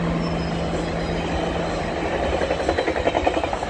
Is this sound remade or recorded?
recorded